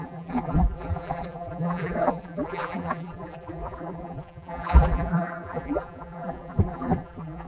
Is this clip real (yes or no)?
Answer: no